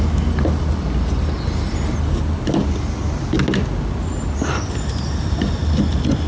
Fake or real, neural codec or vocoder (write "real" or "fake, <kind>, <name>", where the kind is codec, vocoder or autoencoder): real